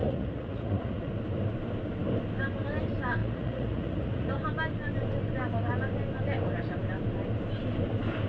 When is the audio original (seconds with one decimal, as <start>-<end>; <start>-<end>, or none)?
1.1-3.2; 4.3-8.3